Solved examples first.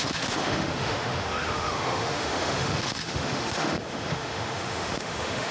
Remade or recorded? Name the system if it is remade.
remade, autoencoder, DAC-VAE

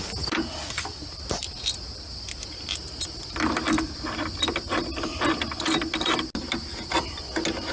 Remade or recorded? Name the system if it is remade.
recorded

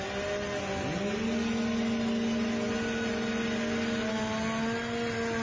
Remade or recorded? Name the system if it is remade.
recorded